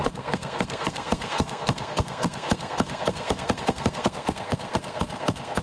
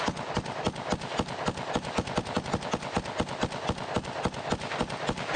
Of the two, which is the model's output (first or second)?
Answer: first